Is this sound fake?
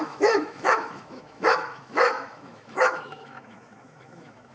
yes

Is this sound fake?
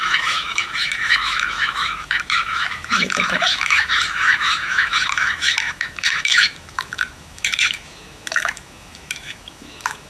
yes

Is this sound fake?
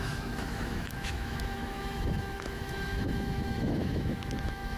yes